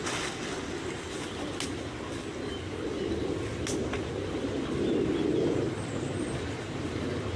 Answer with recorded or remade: recorded